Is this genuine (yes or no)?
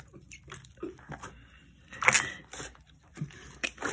yes